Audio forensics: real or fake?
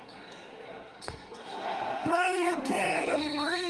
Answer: fake